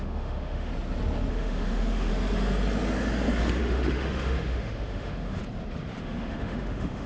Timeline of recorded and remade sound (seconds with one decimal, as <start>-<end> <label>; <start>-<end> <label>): 0.0-0.7 remade; 0.7-1.3 recorded; 1.3-2.1 remade; 2.1-3.6 recorded; 3.6-5.4 remade; 5.4-6.0 recorded; 6.0-7.1 remade